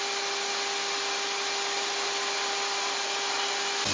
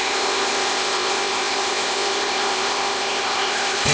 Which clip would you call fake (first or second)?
second